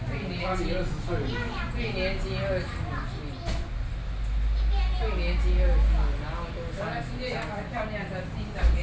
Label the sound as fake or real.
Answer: real